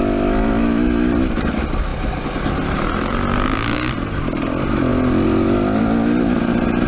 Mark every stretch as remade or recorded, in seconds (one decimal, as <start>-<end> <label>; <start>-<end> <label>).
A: 0.0-6.9 recorded